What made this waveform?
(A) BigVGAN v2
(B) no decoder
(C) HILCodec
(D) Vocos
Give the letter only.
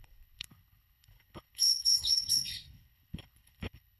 C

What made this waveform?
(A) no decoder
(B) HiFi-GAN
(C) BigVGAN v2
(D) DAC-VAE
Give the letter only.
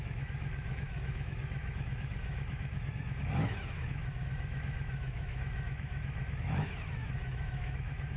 D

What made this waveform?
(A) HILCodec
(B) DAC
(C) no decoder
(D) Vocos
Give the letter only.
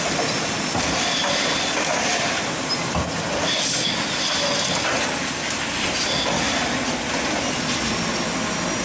C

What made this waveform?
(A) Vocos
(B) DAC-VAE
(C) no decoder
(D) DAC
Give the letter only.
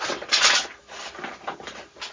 C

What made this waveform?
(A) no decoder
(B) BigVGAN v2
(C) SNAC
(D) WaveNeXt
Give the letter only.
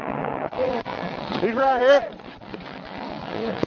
D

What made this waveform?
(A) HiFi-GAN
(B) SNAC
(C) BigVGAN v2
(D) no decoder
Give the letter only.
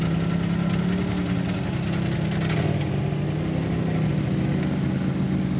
D